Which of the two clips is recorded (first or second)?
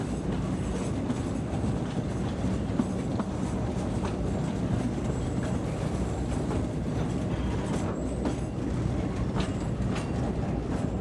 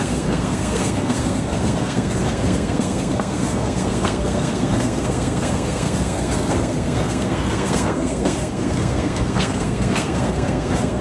first